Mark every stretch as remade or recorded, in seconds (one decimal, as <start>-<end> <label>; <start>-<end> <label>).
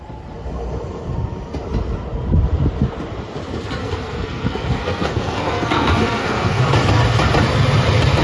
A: 0.0-3.8 recorded; 3.8-6.6 remade; 6.6-8.2 recorded